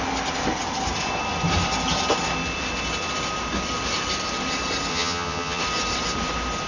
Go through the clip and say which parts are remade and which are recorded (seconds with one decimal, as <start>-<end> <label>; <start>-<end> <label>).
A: 0.0-4.9 recorded; 4.9-5.6 remade; 5.6-6.7 recorded